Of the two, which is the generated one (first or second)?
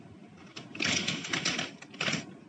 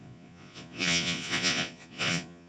second